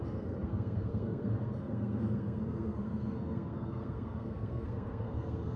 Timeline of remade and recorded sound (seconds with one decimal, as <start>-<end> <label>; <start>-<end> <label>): 0.0-5.6 remade

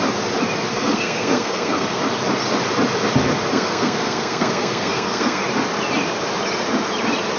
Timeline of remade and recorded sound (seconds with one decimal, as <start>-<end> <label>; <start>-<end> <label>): 0.0-0.7 recorded; 0.7-2.0 remade; 2.0-3.5 recorded; 3.5-5.4 remade; 5.4-7.4 recorded

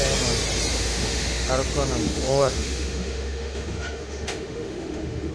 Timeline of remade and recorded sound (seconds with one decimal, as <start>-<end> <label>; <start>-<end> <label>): 0.0-0.7 recorded; 0.7-1.5 remade; 1.5-2.0 recorded; 2.0-5.3 remade

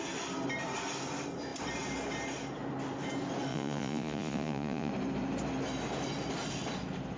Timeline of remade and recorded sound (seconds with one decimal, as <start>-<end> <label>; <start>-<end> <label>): 0.0-3.5 recorded; 3.5-4.9 remade; 4.9-7.2 recorded

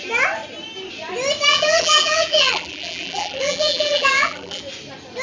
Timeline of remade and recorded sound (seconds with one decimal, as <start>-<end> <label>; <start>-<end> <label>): 0.0-1.5 recorded; 1.5-4.6 remade; 4.6-5.2 recorded

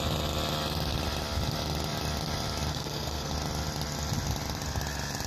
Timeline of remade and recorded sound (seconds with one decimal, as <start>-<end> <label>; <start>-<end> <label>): 0.0-2.7 recorded; 2.7-3.3 remade; 3.3-5.3 recorded

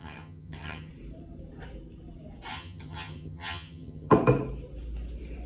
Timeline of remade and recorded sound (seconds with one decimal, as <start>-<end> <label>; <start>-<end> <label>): 0.0-0.9 remade; 0.9-2.5 recorded; 2.5-4.1 remade; 4.1-5.5 recorded